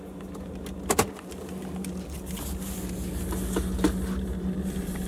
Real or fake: real